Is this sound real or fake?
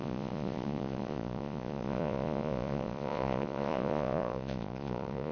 fake